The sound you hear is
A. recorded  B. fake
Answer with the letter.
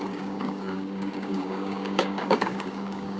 B